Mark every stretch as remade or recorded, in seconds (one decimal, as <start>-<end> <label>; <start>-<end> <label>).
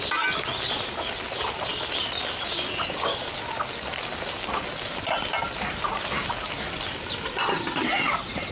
0.0-8.5 recorded